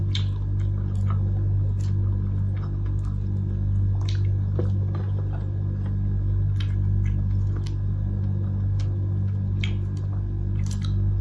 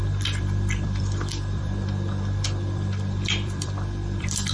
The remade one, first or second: second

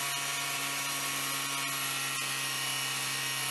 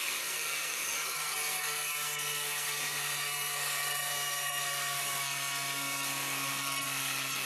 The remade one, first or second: second